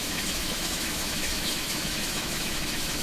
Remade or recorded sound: remade